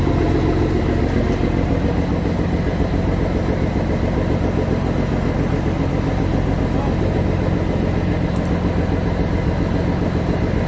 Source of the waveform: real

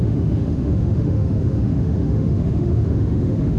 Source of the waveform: fake